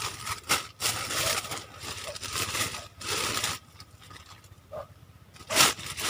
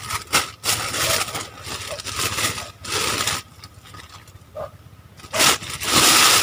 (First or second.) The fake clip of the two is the first